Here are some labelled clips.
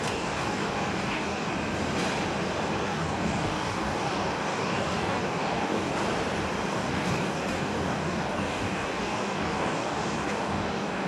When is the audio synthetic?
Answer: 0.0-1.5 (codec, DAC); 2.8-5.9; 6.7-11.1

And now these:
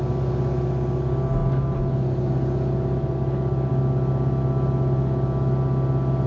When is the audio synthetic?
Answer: none